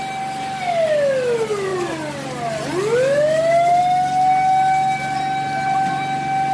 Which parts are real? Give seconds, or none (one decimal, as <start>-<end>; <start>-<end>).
0.0-6.5